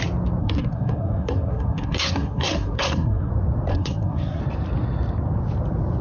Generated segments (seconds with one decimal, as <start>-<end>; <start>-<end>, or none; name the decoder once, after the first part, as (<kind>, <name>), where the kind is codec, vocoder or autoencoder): 0.4-3.3 (codec, SNAC); 3.7-4.4